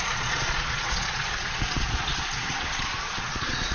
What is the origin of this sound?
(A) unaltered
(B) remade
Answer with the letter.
B